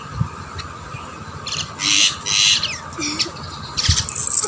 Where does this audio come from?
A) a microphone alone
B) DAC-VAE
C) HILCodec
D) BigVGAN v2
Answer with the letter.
A